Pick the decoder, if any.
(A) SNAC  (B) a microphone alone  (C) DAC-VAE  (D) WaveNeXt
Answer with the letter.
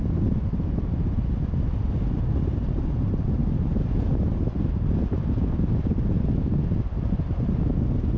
B